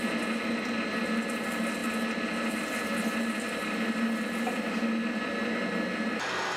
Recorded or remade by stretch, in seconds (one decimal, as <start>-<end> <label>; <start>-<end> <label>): 0.0-6.6 recorded